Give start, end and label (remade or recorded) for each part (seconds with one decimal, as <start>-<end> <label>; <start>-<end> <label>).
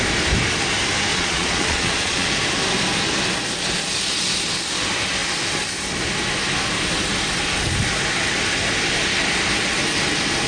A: 0.0-1.1 recorded; 1.1-2.3 remade; 2.3-10.5 recorded